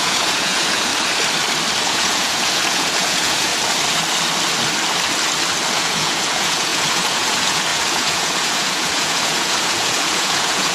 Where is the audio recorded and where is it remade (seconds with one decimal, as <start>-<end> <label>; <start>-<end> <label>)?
0.0-0.9 remade; 0.9-1.8 recorded; 1.8-3.5 remade; 3.5-5.7 recorded; 5.7-10.7 remade